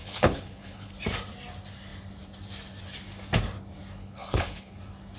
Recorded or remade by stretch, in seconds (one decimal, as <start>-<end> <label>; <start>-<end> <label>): 0.0-0.9 remade; 0.9-4.0 recorded; 4.0-4.8 remade; 4.8-5.2 recorded